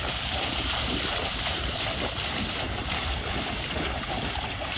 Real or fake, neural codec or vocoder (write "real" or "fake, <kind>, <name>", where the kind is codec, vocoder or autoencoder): fake, vocoder, BigVGAN v2